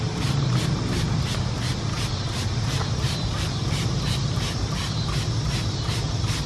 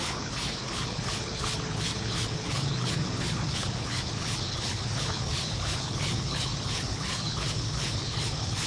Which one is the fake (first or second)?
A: second